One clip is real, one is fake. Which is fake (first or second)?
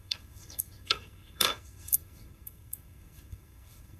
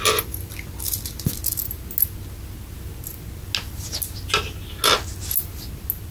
first